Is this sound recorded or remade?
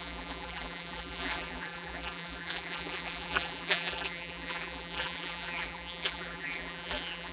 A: remade